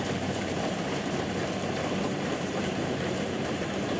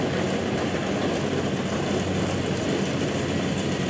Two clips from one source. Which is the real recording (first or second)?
second